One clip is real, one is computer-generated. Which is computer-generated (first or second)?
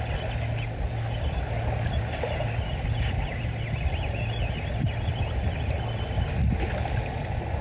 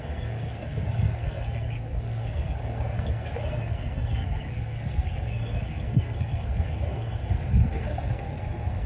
second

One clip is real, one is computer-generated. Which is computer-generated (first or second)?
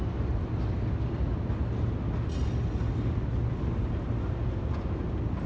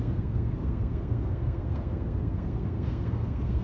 second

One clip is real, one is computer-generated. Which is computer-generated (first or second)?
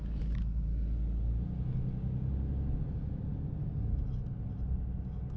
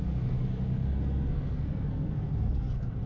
second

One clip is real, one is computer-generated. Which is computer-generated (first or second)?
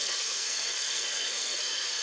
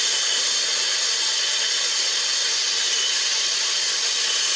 first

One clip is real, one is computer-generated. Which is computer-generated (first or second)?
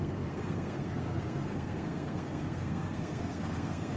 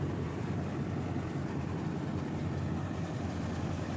first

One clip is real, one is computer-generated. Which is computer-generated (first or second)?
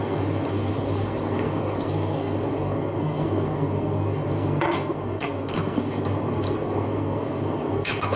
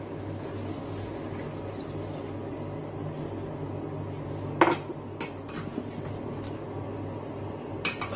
first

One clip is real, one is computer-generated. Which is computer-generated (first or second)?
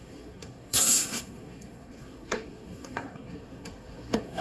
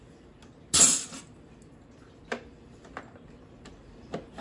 first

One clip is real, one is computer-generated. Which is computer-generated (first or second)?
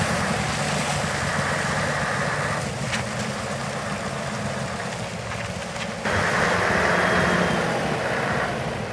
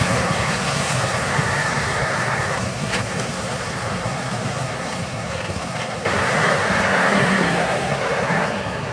second